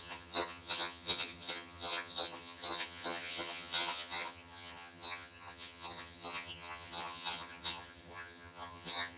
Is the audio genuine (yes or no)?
no